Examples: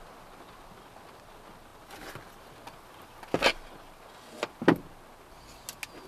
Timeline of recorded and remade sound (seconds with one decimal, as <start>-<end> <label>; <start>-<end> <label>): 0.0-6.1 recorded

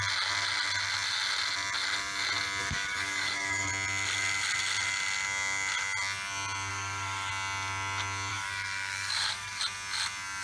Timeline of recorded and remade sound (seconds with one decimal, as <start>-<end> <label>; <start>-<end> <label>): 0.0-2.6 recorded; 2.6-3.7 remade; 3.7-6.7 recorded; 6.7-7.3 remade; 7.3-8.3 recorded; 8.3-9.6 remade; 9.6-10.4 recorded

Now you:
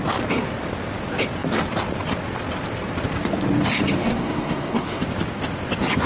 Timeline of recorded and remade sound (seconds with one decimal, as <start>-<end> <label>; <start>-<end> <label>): 0.0-4.0 recorded; 4.0-5.0 remade; 5.0-6.1 recorded

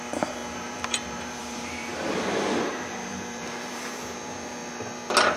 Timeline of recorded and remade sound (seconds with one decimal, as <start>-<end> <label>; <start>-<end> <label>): 0.0-4.6 remade; 4.6-5.4 recorded